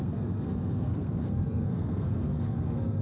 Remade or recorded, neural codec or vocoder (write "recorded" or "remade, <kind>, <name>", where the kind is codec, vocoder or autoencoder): remade, codec, SNAC